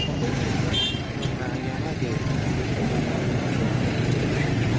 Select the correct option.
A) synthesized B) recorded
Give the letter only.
B